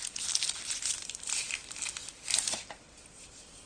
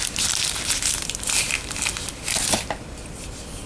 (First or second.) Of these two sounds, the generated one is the first